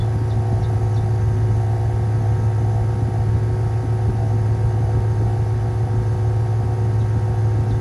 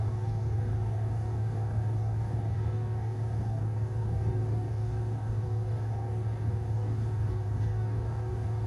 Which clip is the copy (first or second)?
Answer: second